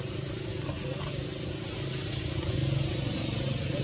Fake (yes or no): no